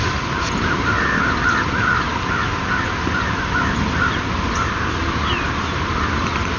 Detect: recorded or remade recorded